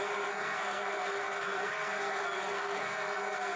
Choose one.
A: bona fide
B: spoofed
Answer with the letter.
B